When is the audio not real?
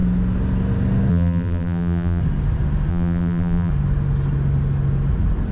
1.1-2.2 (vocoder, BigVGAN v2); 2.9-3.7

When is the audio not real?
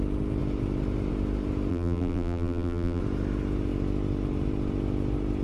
1.7-3.0 (vocoder, BigVGAN v2)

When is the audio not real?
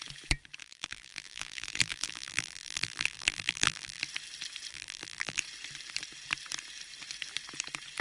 0.6-4.0 (vocoder, BigVGAN v2); 4.7-5.4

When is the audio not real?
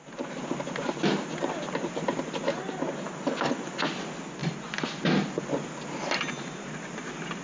none